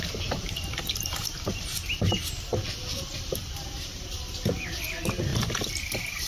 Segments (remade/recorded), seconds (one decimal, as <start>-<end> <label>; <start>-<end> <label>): 0.0-6.3 recorded